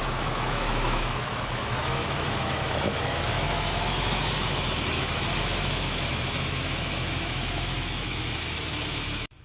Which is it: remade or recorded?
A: remade